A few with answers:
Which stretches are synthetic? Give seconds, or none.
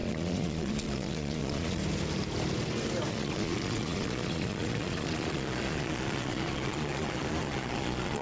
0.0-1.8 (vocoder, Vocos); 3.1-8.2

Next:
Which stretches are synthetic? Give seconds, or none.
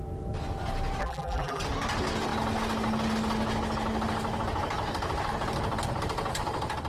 1.0-1.6 (vocoder, BigVGAN v2)